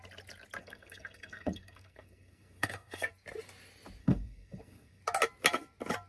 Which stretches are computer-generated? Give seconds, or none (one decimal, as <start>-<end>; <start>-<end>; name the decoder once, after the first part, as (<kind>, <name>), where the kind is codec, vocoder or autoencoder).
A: 0.6-3.1 (codec, SNAC); 4.0-5.0